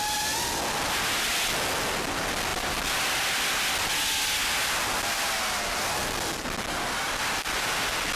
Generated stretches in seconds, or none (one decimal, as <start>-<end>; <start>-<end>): none

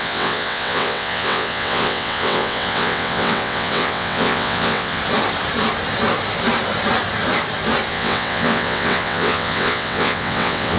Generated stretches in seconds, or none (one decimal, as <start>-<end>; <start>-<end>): 0.0-5.0; 7.9-10.8